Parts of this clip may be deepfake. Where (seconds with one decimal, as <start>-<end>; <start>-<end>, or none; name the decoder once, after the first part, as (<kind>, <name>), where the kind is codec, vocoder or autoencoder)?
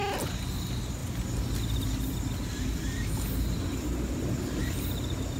none